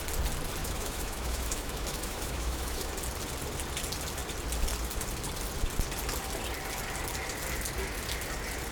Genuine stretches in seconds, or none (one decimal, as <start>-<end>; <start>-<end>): 0.0-0.6; 2.9-8.7